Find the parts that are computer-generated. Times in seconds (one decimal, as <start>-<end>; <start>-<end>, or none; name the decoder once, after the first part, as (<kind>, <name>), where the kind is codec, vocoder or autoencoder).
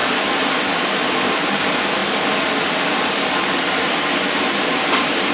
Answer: none